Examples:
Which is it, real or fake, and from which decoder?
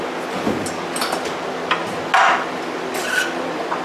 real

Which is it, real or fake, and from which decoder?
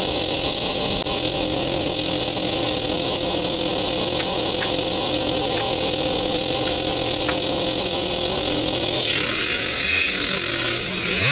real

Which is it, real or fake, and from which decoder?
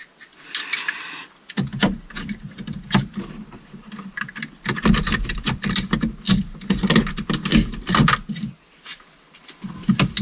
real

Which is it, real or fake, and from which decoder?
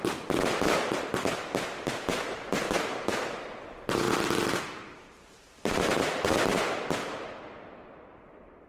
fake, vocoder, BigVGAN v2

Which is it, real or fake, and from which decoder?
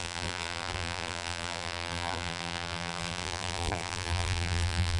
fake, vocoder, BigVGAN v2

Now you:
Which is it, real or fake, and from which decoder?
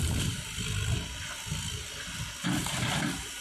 fake, vocoder, BigVGAN v2